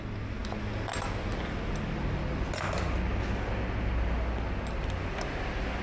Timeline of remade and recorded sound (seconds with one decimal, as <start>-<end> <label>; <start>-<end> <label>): 0.0-5.8 recorded